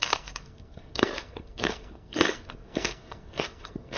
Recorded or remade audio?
remade